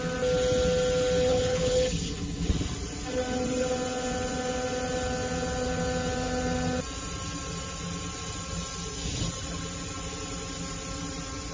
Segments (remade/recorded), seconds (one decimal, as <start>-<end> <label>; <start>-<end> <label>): 0.0-1.3 recorded; 1.3-2.5 remade; 2.5-11.5 recorded